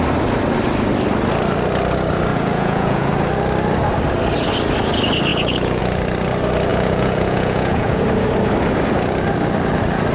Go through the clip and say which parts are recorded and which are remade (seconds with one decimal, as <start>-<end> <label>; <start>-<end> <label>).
0.0-2.3 recorded; 2.3-3.1 remade; 3.1-5.3 recorded; 5.3-5.8 remade; 5.8-6.7 recorded; 6.7-8.0 remade; 8.0-10.1 recorded